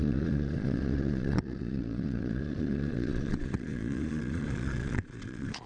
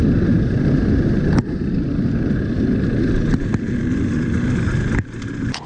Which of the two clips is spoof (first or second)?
first